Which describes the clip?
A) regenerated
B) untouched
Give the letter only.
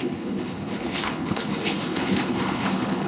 A